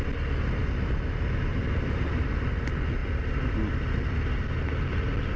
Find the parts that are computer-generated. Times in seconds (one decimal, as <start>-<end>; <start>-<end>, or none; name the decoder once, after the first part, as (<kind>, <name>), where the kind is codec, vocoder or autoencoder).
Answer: 1.5-2.5 (vocoder, BigVGAN v2)